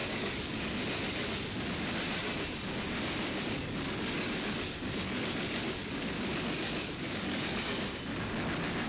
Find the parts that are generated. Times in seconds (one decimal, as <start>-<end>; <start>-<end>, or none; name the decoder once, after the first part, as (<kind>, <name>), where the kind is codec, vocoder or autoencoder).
0.0-0.7 (codec, DAC); 3.3-7.6